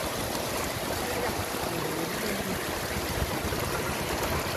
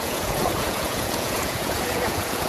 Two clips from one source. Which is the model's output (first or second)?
second